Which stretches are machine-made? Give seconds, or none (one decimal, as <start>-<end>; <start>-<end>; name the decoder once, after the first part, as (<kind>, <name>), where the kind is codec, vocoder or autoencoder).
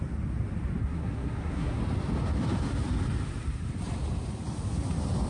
0.8-1.8 (codec, SNAC)